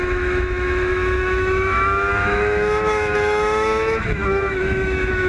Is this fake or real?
fake